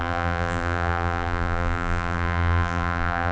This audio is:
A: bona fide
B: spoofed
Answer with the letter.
B